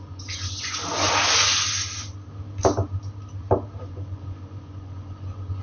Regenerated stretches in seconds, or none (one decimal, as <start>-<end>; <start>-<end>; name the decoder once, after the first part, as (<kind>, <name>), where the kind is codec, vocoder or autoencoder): 0.0-0.8 (vocoder, Vocos); 3.8-5.6